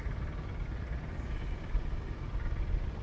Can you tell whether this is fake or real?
real